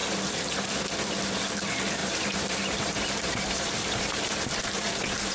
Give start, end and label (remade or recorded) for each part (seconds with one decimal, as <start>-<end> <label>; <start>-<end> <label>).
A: 0.0-2.0 recorded; 2.0-4.2 remade; 4.2-5.3 recorded